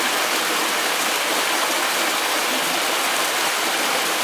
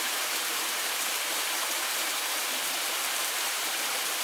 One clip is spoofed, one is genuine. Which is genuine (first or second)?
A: first